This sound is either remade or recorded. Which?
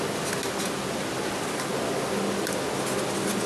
recorded